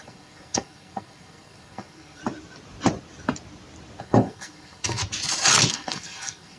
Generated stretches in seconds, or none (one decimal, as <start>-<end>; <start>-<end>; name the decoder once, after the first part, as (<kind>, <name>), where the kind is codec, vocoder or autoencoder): 0.0-2.2 (codec, SNAC); 4.0-5.0; 5.7-6.6